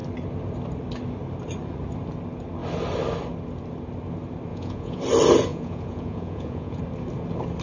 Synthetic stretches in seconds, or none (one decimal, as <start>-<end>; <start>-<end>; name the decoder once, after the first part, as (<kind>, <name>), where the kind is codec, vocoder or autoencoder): 4.5-5.0 (vocoder, Vocos); 5.5-6.8